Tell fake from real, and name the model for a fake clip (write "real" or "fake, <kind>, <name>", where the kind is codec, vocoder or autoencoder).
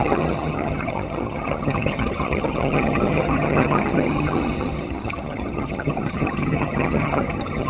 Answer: fake, vocoder, HiFi-GAN